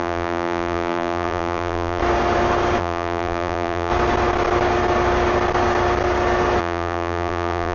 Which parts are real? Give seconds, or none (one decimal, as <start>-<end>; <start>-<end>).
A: 2.0-2.8; 3.9-6.6